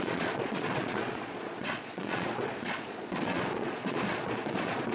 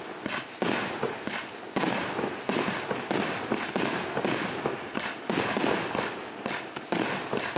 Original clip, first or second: second